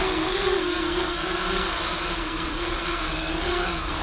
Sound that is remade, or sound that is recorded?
remade